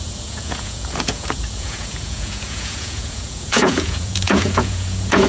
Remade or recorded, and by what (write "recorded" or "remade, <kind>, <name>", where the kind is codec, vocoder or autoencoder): remade, vocoder, Vocos